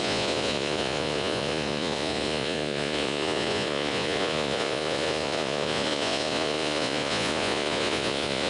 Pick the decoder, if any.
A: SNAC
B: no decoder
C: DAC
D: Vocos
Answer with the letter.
D